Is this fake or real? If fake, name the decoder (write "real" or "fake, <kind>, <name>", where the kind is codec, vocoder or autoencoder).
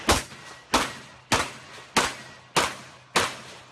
real